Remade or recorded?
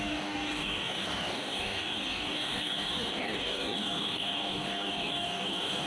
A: remade